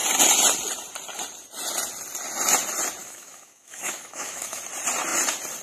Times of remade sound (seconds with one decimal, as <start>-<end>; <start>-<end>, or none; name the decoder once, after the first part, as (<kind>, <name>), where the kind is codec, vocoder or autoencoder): 3.0-4.6 (autoencoder, DAC-VAE)

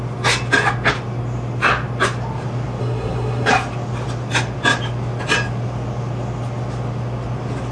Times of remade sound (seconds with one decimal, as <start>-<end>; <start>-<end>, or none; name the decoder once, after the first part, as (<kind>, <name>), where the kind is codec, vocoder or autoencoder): 2.8-3.5 (codec, SNAC)

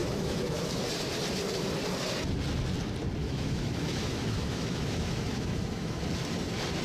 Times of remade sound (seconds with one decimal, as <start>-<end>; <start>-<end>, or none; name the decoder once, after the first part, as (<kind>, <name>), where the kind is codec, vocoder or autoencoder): 0.0-0.8 (autoencoder, DAC-VAE); 3.2-6.0

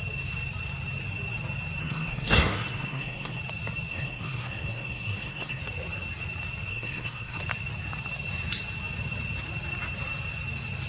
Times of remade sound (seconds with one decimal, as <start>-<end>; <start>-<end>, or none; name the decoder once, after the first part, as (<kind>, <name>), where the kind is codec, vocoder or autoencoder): 1.8-3.4 (codec, SNAC); 3.9-5.6; 6.7-7.4

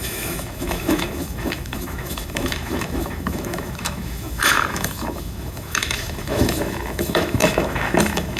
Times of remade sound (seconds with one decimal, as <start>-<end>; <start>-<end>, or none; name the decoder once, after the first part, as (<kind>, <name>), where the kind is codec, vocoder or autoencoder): 0.0-8.4 (autoencoder, DAC-VAE)

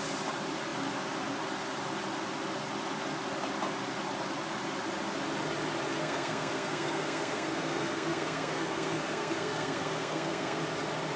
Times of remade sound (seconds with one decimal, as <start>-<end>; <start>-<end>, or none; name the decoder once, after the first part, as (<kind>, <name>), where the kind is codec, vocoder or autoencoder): 6.0-10.6 (codec, SNAC)

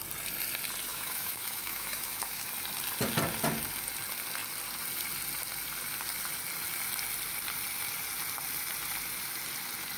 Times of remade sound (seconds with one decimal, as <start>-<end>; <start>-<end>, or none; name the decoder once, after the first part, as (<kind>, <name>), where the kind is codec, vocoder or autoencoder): 0.9-2.5 (autoencoder, DAC-VAE)

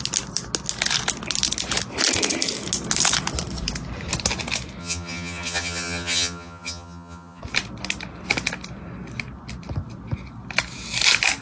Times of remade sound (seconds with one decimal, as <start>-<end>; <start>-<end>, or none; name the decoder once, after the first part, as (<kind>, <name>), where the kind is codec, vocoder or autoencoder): 4.8-7.4 (vocoder, HiFi-GAN)